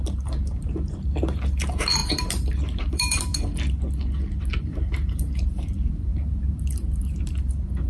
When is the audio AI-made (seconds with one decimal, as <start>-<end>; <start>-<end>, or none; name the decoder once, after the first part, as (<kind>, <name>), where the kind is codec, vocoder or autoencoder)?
0.0-3.3 (vocoder, BigVGAN v2); 4.6-7.9